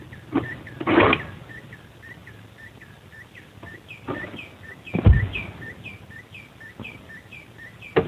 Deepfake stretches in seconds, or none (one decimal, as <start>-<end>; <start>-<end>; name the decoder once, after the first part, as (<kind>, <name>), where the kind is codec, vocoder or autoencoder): none